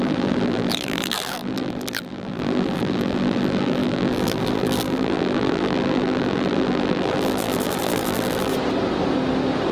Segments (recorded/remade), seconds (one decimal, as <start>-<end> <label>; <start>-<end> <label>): 0.0-8.5 remade; 8.5-9.7 recorded